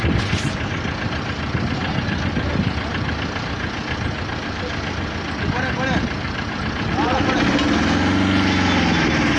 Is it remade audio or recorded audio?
recorded